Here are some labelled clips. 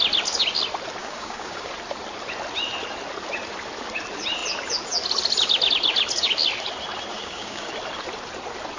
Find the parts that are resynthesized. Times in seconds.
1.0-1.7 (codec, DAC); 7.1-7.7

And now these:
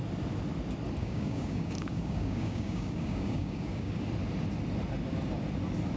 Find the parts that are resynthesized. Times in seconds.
1.0-4.0 (codec, DAC)

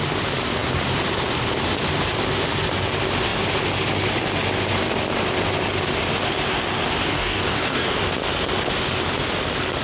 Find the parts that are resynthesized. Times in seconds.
7.1-7.9 (codec, DAC)